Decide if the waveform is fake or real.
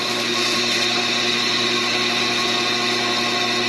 real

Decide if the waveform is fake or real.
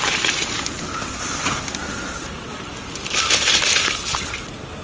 real